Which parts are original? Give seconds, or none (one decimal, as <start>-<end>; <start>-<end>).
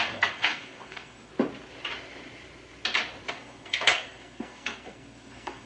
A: 1.3-3.3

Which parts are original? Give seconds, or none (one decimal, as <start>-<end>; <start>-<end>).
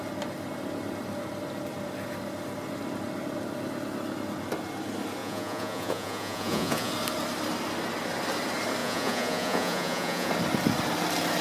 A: 0.0-5.2; 6.9-8.8; 10.3-11.4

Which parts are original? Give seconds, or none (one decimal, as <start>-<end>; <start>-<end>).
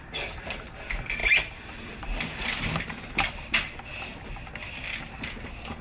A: 0.0-5.8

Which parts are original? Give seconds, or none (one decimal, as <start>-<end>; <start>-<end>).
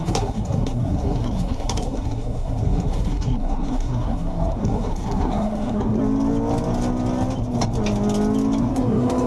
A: 6.0-8.6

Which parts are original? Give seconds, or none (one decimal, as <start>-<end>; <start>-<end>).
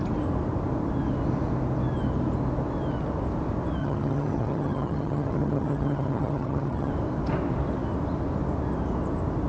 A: 0.0-3.8; 6.9-9.5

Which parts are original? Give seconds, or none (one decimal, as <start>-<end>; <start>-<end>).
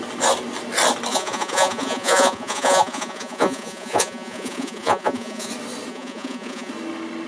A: 0.0-1.1; 5.5-5.9; 6.7-7.3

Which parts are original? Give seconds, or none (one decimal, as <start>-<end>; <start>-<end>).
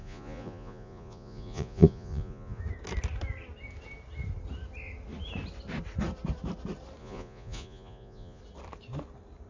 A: 2.6-7.0; 8.4-9.5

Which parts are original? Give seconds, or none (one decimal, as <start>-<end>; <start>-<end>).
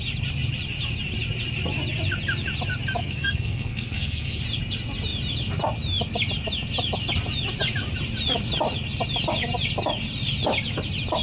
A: 0.0-3.0; 4.4-11.2